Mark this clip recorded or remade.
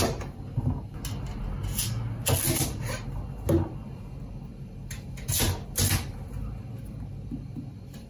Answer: recorded